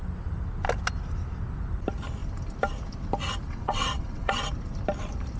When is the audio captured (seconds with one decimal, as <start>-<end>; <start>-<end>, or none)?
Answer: 0.0-3.5; 4.3-5.4